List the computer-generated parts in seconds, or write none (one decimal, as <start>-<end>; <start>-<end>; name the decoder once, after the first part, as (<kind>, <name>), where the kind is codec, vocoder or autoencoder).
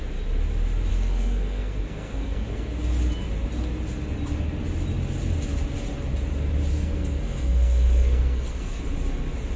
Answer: 0.9-2.7 (codec, SNAC); 6.7-8.8